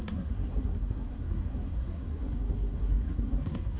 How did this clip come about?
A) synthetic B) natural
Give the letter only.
A